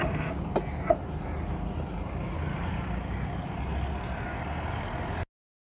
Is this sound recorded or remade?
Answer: recorded